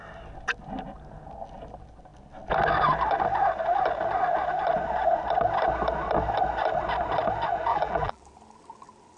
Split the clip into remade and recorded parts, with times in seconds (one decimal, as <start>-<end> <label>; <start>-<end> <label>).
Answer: 0.0-7.7 recorded; 7.7-8.2 remade; 8.2-9.2 recorded